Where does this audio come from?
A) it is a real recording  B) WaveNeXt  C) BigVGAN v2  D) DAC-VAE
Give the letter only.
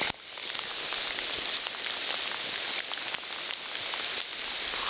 A